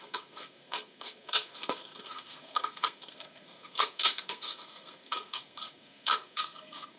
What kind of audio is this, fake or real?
fake